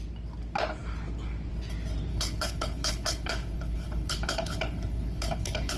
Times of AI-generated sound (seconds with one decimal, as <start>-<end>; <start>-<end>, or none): 2.1-5.8